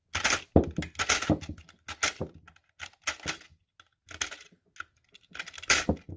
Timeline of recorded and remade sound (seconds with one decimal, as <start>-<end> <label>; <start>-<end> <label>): 0.0-6.2 recorded